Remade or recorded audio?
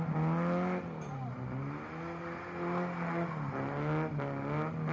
recorded